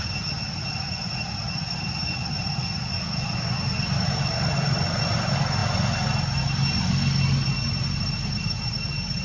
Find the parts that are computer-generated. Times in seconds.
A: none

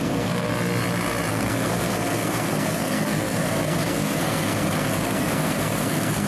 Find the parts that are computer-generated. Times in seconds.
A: 0.0-0.5 (codec, SNAC); 1.3-6.3